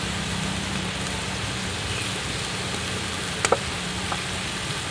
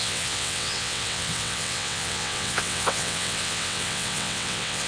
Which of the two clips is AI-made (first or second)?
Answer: second